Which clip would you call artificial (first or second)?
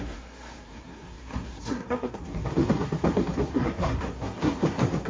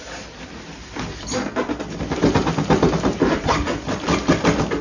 first